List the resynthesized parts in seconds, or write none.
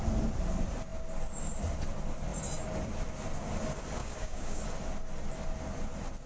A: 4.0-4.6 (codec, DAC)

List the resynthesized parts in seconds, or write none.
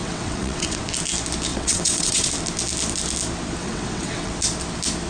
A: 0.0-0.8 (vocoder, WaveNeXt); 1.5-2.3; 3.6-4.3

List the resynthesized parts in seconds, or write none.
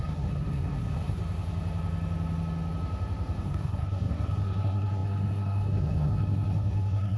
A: 0.0-1.2 (codec, SNAC); 3.4-7.2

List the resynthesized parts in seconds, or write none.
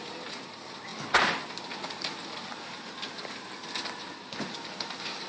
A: none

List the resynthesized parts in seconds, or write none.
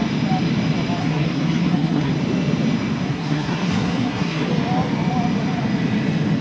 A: 1.0-2.1 (codec, SNAC); 3.1-4.5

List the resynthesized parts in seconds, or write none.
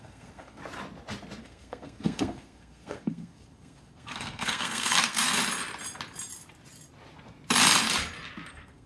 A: 0.0-0.6 (codec, SNAC); 1.4-5.4; 8.5-8.9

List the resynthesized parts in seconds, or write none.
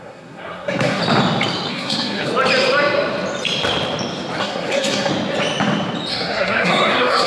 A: 0.0-1.0 (codec, SNAC); 1.7-2.3; 4.4-5.1; 6.1-7.3